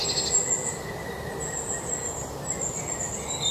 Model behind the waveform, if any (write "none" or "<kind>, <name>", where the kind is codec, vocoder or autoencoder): none